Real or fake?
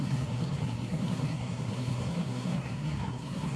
fake